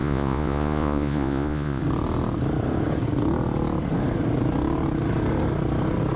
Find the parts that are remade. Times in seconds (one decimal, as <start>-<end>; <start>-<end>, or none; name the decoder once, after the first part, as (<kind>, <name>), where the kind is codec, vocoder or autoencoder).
0.0-1.8 (vocoder, Vocos)